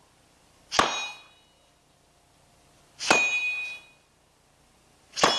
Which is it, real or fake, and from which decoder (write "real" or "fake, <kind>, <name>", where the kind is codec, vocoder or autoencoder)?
real